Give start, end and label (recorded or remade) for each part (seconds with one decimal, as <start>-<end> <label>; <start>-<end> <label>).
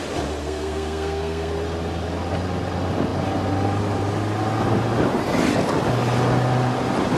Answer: 0.0-0.4 recorded; 0.4-1.5 remade; 1.5-7.2 recorded